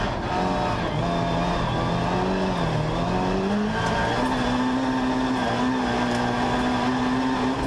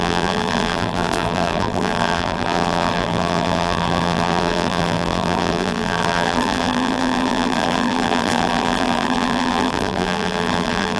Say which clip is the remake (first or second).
second